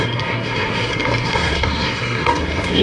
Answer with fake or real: fake